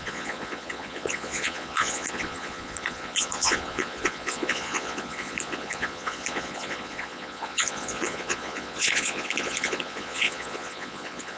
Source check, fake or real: fake